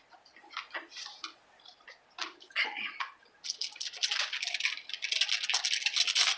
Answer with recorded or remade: recorded